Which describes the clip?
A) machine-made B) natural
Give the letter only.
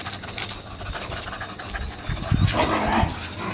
B